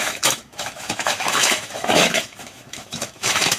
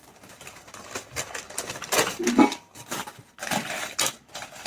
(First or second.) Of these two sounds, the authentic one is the second